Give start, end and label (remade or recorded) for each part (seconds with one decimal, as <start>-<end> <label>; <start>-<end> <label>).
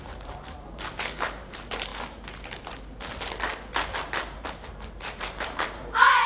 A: 0.0-1.9 remade; 1.9-4.4 recorded; 4.4-6.3 remade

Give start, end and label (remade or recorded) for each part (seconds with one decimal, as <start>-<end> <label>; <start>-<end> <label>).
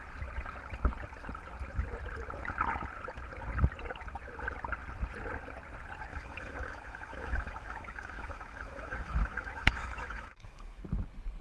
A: 0.0-6.1 recorded; 6.1-10.8 remade; 10.8-11.4 recorded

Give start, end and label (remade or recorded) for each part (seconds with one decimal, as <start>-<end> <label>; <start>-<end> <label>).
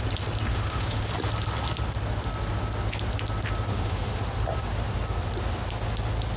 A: 0.0-0.5 recorded; 0.5-1.0 remade; 1.0-3.7 recorded; 3.7-4.2 remade; 4.2-6.4 recorded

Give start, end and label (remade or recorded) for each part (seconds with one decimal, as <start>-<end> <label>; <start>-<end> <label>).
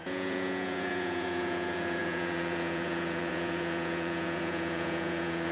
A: 0.0-5.5 remade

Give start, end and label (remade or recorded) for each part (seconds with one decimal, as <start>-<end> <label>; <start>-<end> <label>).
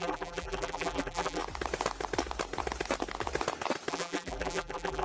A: 0.0-1.4 remade; 1.4-3.9 recorded; 3.9-5.0 remade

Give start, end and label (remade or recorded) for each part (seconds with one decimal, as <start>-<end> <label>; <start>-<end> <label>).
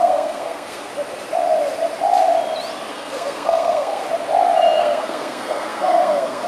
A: 0.0-0.9 remade; 0.9-2.9 recorded; 2.9-4.0 remade; 4.0-4.8 recorded; 4.8-6.5 remade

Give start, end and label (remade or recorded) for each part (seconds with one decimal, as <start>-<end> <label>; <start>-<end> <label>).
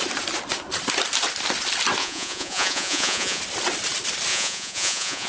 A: 0.0-2.0 recorded; 2.0-3.4 remade; 3.4-4.3 recorded; 4.3-5.3 remade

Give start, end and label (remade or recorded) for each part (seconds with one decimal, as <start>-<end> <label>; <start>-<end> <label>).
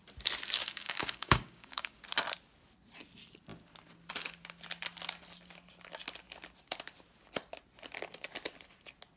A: 0.0-0.6 recorded; 0.6-2.0 remade; 2.0-9.2 recorded